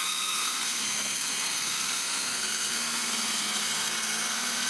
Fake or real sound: fake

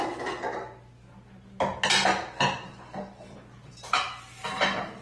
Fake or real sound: real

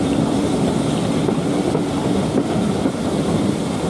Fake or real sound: real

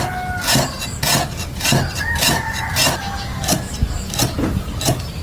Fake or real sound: real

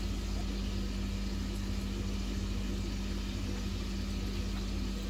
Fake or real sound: real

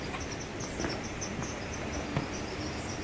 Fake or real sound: real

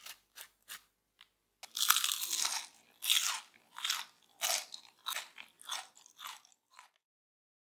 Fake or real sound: real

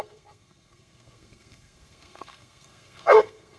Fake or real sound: fake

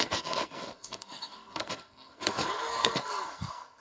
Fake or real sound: fake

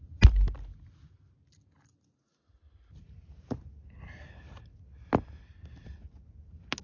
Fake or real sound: real